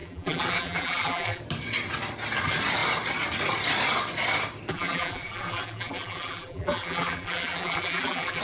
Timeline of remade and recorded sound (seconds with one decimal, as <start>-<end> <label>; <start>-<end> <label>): 0.0-1.4 remade; 1.4-4.7 recorded; 4.7-8.4 remade